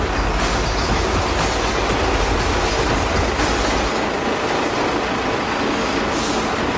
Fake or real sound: real